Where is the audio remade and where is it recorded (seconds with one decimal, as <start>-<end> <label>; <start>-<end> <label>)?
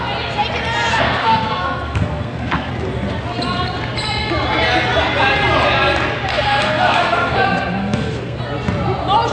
0.0-0.9 recorded; 0.9-2.7 remade; 2.7-6.3 recorded; 6.3-8.4 remade; 8.4-9.3 recorded